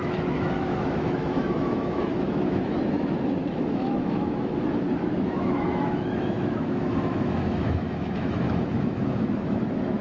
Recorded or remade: remade